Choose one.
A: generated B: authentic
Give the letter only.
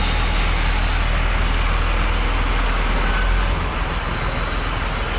B